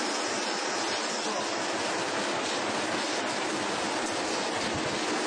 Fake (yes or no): no